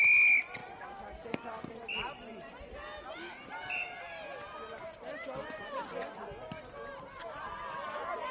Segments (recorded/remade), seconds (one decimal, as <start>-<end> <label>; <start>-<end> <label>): 0.0-8.3 recorded